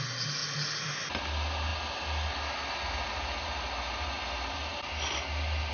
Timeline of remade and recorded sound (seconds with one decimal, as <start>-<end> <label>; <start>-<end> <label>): 0.0-5.7 recorded

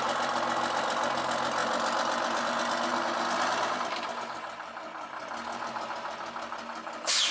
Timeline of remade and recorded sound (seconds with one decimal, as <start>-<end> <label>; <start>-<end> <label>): 0.0-7.3 recorded

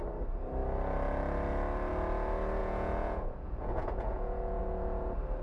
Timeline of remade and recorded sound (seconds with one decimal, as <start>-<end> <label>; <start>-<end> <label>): 0.0-2.6 recorded; 2.6-4.6 remade; 4.6-5.4 recorded